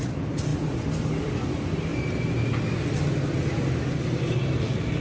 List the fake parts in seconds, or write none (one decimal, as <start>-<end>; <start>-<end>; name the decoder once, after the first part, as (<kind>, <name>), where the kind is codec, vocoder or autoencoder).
none